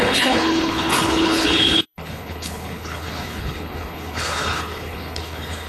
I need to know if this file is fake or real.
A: fake